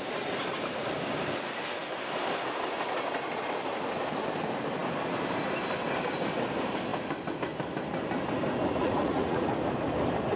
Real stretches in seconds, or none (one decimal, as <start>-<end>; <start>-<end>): 0.0-8.8; 9.5-10.4